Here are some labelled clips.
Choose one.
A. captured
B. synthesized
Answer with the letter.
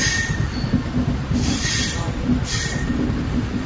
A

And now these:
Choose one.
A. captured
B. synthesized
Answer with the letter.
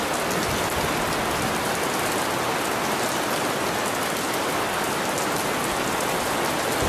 A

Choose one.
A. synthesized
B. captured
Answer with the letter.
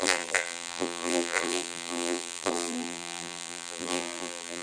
A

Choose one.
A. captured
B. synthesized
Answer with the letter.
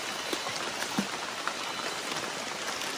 A